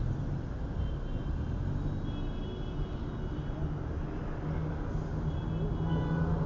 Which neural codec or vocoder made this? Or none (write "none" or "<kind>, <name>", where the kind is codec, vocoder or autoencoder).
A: none